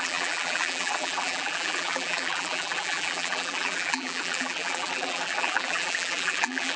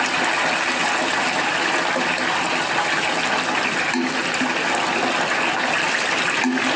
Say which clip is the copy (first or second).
first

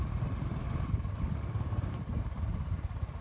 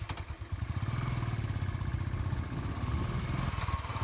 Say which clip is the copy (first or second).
first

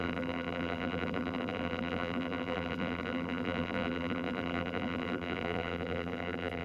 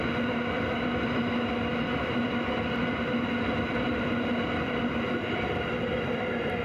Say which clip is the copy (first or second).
first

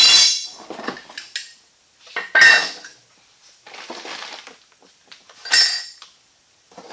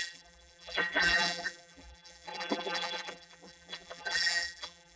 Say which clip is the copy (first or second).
second